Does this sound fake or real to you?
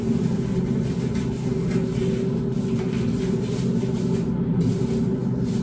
real